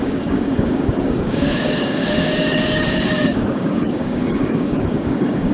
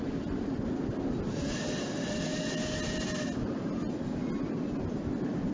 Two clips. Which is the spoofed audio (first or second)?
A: first